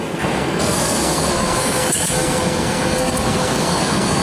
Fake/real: fake